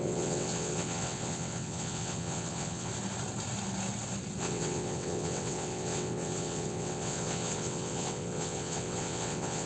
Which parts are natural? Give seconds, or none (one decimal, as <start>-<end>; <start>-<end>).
2.9-4.4